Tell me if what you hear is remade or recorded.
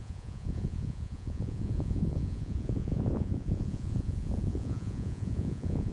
remade